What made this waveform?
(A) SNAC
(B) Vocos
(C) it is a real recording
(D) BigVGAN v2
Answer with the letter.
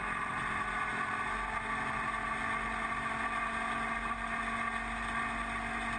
C